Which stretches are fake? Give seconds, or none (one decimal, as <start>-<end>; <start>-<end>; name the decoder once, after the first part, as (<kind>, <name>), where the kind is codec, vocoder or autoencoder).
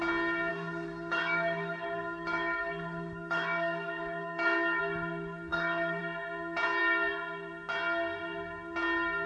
0.5-4.8 (codec, DAC); 5.5-6.0